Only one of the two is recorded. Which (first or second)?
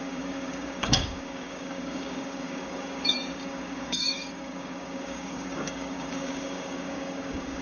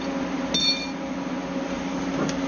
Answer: second